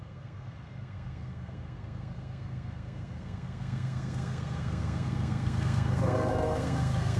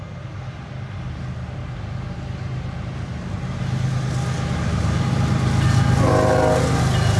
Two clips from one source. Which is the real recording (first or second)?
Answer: second